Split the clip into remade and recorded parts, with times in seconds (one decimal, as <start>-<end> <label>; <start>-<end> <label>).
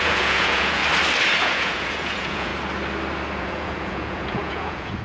0.0-0.8 remade; 0.8-1.4 recorded; 1.4-2.5 remade; 2.5-3.4 recorded; 3.4-5.0 remade